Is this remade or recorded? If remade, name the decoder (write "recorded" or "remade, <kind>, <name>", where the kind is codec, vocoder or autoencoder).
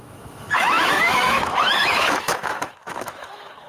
remade, autoencoder, DAC-VAE